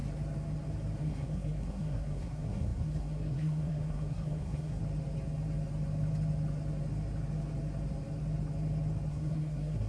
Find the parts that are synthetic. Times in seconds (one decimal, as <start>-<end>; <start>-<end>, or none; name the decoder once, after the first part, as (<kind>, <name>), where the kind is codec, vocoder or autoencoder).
1.0-4.8 (codec, SNAC); 9.1-9.9